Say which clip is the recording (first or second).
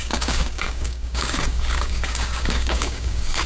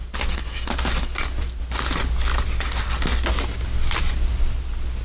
second